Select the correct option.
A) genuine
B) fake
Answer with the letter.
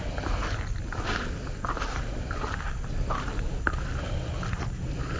A